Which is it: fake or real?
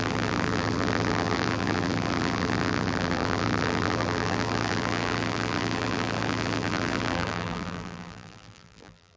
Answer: fake